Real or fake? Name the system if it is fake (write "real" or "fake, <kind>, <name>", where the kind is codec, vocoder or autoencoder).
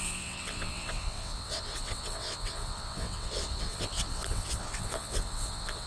fake, vocoder, WaveNeXt